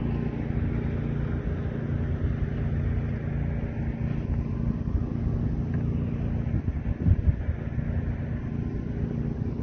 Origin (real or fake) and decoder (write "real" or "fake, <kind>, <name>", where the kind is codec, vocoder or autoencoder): real